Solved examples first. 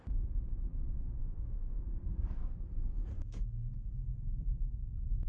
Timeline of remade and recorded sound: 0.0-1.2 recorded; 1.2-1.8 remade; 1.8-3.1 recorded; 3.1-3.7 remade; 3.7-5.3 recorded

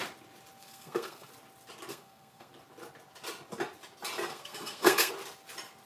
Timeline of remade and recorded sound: 0.0-0.6 recorded; 0.6-1.3 remade; 1.3-1.9 recorded; 1.9-2.5 remade; 2.5-4.3 recorded; 4.3-5.1 remade; 5.1-5.9 recorded

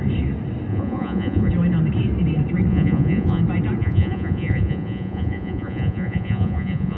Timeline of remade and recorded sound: 0.0-0.7 recorded; 0.7-1.5 remade; 1.5-2.7 recorded; 2.7-3.4 remade; 3.4-3.8 recorded; 3.8-7.0 remade

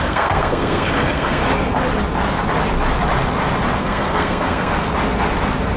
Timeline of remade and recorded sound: 0.0-1.4 remade; 1.4-3.8 recorded; 3.8-4.7 remade; 4.7-5.8 recorded

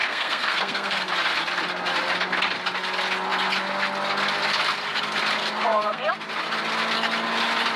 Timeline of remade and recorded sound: 0.0-1.1 remade; 1.1-5.4 recorded; 5.4-6.1 remade; 6.1-7.8 recorded

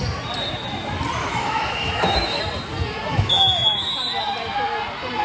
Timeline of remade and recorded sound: 0.0-1.2 recorded; 1.2-2.4 remade; 2.4-3.1 recorded; 3.1-3.9 remade; 3.9-5.2 recorded

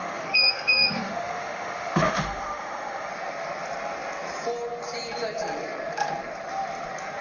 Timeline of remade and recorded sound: 0.0-3.1 remade; 3.1-7.2 recorded